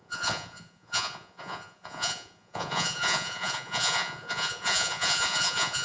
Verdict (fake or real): fake